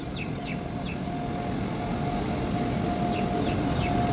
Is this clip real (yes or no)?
yes